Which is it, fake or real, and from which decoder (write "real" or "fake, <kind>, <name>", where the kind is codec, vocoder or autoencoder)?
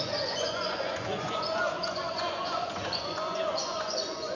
fake, vocoder, Vocos